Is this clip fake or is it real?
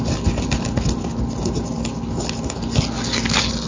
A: real